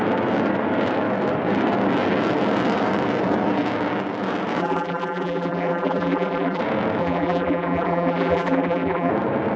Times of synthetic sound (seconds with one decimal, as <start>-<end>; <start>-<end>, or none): 4.6-6.6; 7.0-9.1